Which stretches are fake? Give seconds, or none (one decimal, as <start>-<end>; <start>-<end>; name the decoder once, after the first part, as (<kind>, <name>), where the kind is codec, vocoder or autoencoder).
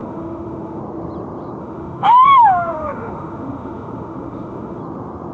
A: 0.0-0.8 (autoencoder, DAC-VAE); 1.6-4.8